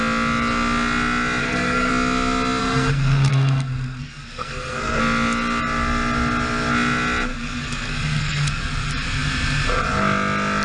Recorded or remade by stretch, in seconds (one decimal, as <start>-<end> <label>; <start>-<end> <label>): 0.0-1.4 recorded; 1.4-1.9 remade; 1.9-2.6 recorded; 2.6-5.0 remade; 5.0-7.3 recorded; 7.3-8.6 remade; 8.6-10.6 recorded